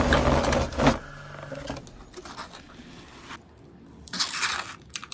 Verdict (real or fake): real